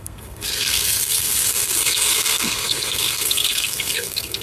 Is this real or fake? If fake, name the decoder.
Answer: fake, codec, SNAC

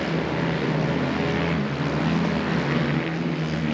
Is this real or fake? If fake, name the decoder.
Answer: real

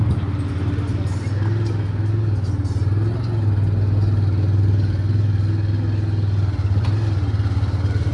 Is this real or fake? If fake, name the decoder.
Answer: real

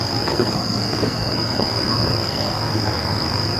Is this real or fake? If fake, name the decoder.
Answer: fake, codec, SNAC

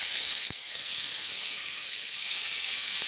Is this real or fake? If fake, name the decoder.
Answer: fake, codec, SNAC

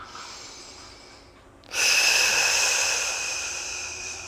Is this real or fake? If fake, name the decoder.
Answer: real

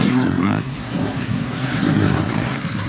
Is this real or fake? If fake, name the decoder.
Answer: fake, codec, SNAC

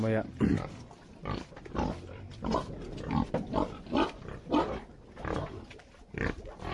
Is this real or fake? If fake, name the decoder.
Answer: real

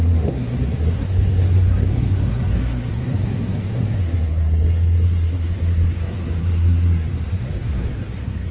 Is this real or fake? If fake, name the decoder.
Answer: fake, codec, SNAC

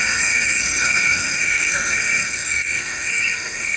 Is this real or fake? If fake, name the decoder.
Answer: fake, codec, SNAC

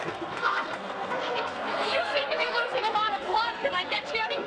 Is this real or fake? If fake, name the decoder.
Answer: fake, codec, SNAC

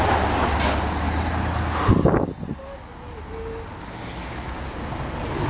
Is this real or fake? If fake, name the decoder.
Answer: real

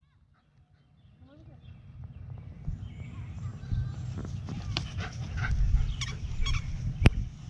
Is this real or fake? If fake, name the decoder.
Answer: real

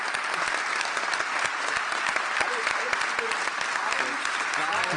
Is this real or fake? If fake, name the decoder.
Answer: real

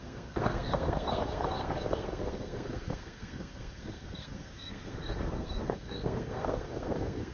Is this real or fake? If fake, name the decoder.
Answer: fake, codec, SNAC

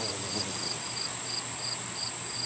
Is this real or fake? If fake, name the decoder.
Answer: real